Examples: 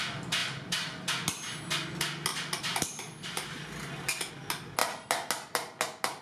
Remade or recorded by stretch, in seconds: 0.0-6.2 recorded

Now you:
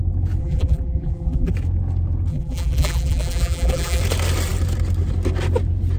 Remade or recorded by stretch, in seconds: 0.0-0.4 recorded; 0.4-1.5 remade; 1.5-2.3 recorded; 2.3-4.0 remade; 4.0-6.0 recorded

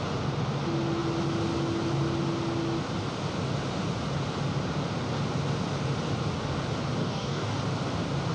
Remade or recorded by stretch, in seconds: 0.0-7.0 recorded; 7.0-7.6 remade; 7.6-8.3 recorded

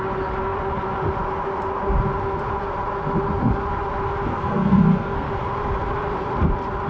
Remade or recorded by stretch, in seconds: 0.0-4.3 recorded; 4.3-5.3 remade; 5.3-6.9 recorded

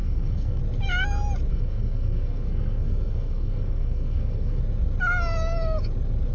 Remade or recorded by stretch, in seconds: 0.0-0.6 remade; 0.6-1.5 recorded; 1.5-4.6 remade; 4.6-6.3 recorded